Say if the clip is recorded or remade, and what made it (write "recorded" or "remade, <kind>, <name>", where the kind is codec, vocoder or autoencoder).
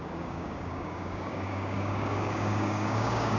remade, codec, DAC